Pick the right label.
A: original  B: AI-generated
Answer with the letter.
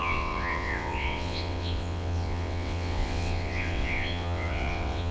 B